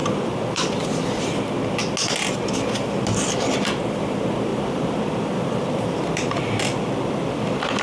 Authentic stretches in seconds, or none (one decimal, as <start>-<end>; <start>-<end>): 1.2-4.5; 6.5-7.8